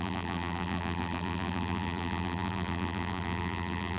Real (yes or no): no